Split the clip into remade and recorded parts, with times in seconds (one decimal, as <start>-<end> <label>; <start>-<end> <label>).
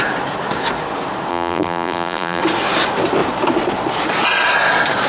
0.0-1.3 recorded; 1.3-2.4 remade; 2.4-5.1 recorded